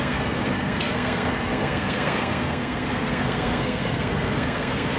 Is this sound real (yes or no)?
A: no